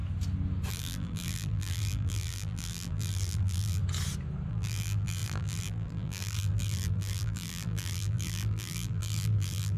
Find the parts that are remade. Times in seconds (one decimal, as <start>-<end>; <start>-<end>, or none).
0.7-3.8; 4.5-9.8